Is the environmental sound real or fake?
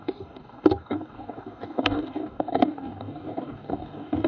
fake